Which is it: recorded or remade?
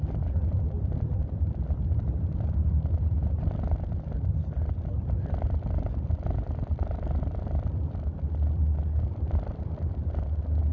recorded